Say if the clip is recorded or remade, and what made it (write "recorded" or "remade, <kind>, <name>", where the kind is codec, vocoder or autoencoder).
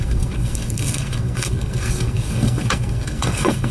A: remade, codec, SNAC